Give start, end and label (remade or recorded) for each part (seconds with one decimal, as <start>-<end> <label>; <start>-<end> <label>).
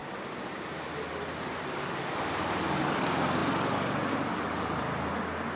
0.0-5.6 recorded